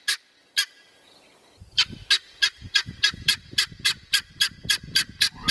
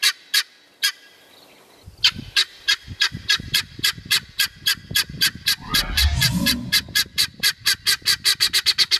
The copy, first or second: first